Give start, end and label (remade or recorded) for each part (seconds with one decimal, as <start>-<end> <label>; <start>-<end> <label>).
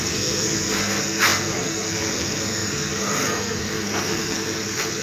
0.0-5.0 remade